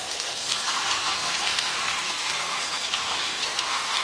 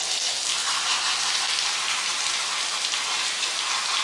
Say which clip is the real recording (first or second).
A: second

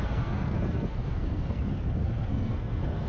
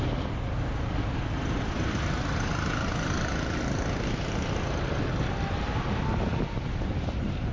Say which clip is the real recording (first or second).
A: second